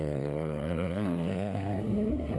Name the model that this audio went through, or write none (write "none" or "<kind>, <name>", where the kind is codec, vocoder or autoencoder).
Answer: codec, SNAC